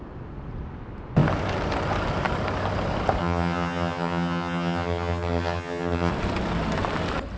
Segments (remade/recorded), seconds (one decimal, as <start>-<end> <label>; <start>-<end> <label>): 0.0-3.2 recorded; 3.2-6.1 remade; 6.1-7.4 recorded